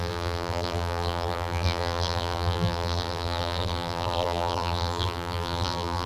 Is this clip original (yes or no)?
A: no